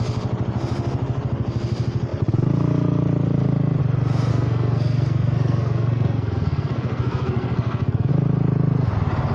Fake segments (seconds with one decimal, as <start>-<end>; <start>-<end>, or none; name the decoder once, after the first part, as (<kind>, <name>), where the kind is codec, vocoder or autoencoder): 4.3-8.1 (codec, SNAC)